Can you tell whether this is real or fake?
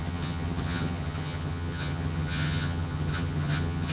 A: fake